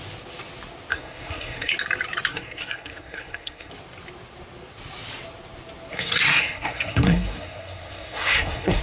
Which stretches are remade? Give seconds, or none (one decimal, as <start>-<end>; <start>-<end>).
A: 0.9-1.7; 2.3-3.7; 5.9-8.8